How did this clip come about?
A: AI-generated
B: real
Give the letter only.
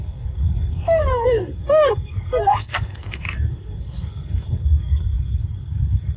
A